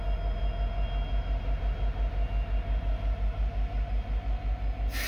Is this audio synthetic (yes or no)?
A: no